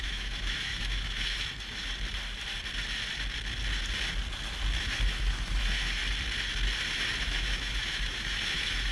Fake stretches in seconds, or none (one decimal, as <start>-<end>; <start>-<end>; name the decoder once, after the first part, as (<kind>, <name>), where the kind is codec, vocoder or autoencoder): 0.0-1.9 (autoencoder, DAC-VAE); 4.8-6.0; 7.2-8.9

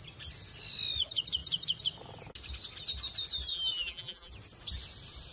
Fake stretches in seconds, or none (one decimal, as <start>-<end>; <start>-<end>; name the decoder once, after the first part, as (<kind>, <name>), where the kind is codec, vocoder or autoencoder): 3.5-4.3 (vocoder, BigVGAN v2)